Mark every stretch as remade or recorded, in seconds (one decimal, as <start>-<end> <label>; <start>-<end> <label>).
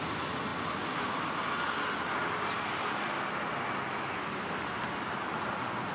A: 0.0-5.9 recorded